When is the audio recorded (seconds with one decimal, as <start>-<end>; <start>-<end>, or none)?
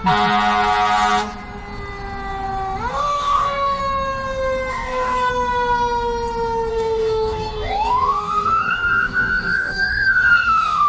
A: 0.0-2.9; 3.8-4.7; 5.3-6.7